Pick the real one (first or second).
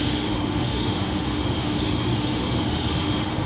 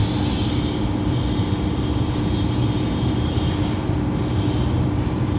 second